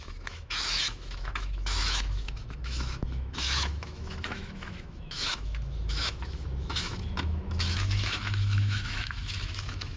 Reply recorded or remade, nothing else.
remade